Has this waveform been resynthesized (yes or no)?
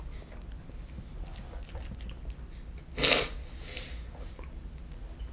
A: no